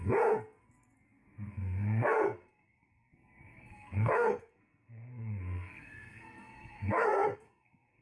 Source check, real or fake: fake